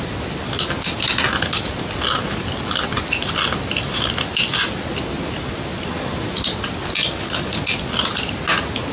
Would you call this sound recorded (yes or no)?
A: yes